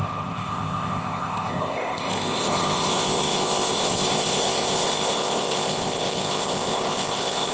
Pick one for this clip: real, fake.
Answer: fake